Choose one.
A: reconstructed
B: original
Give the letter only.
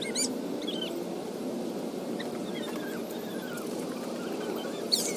B